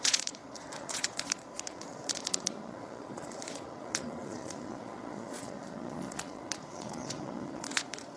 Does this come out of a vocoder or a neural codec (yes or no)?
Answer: yes